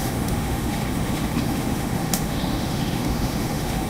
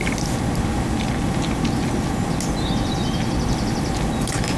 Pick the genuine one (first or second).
second